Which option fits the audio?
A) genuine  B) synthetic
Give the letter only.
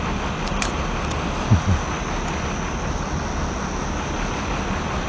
A